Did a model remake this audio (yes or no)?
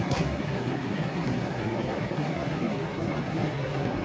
yes